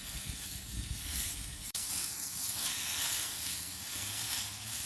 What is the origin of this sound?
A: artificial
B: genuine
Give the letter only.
A